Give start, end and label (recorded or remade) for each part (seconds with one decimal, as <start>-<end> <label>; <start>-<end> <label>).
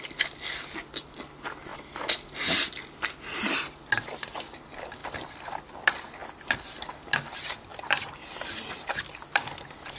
0.0-5.0 recorded; 5.0-5.6 remade; 5.6-7.7 recorded; 7.7-10.0 remade